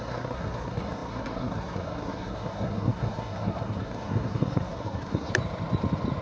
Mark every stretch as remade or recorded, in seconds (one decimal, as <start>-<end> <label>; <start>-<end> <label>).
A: 0.0-5.3 remade; 5.3-6.2 recorded